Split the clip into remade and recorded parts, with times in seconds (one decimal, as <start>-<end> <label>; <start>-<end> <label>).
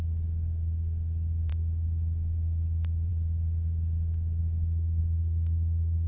0.0-1.5 recorded; 1.5-3.1 remade; 3.1-4.4 recorded; 4.4-5.0 remade; 5.0-6.1 recorded